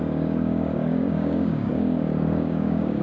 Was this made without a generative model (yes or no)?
no